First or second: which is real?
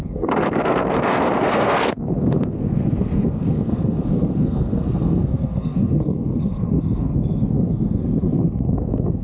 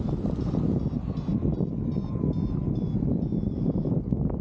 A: second